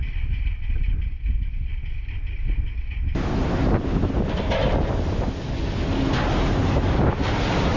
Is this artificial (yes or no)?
no